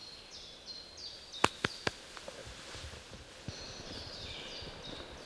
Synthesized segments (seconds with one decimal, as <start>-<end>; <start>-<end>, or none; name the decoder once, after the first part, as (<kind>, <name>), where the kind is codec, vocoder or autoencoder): none